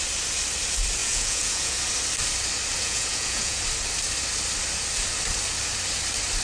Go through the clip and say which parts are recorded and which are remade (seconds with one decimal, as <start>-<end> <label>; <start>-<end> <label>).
0.0-1.0 recorded; 1.0-1.8 remade; 1.8-2.8 recorded; 2.8-3.6 remade; 3.6-6.4 recorded